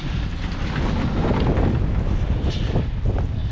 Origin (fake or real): real